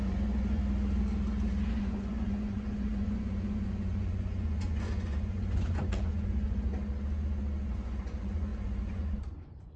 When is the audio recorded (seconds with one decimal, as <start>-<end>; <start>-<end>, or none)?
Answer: 0.6-1.7; 6.7-7.7